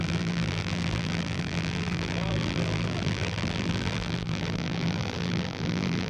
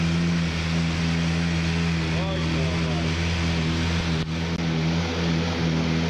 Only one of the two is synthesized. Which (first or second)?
first